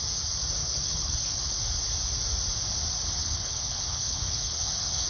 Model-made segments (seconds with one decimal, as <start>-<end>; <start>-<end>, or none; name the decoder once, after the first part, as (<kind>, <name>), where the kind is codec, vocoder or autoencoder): 0.6-1.6 (codec, HILCodec); 3.2-5.1